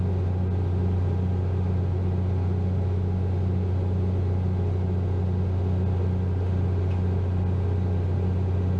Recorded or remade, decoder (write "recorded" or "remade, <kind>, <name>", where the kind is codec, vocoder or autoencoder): recorded